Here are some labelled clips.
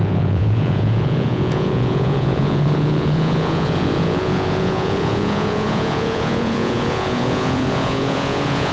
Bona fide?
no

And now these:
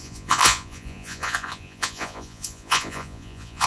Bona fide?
no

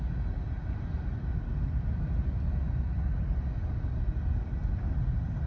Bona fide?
yes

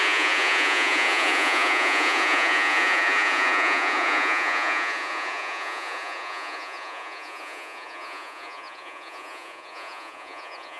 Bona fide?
no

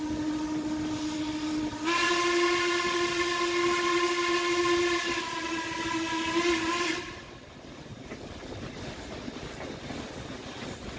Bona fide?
yes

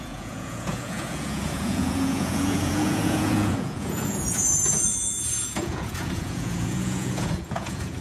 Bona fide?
no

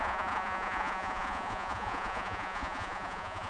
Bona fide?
no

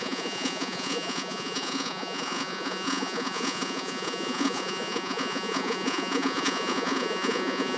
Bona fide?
no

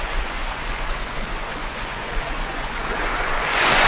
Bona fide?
no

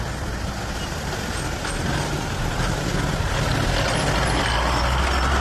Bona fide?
yes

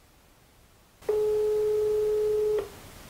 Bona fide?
yes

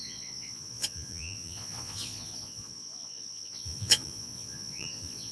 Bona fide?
no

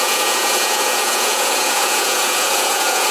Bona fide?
no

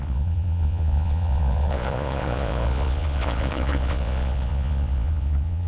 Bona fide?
no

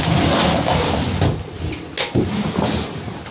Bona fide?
yes